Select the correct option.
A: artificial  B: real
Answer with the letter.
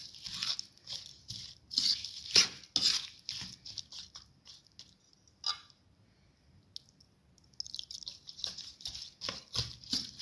B